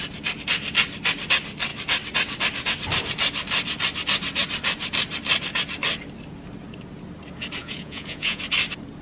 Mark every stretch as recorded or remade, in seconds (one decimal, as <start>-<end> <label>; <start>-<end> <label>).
0.0-7.6 recorded; 7.6-8.4 remade; 8.4-9.0 recorded